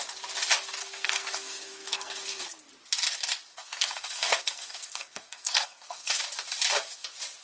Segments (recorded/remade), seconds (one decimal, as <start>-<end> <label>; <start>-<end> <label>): 0.0-0.8 recorded; 0.8-2.4 remade; 2.4-3.5 recorded; 3.5-6.2 remade; 6.2-7.4 recorded